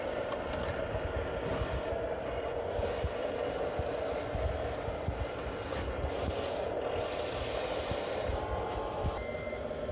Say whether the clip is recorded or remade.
recorded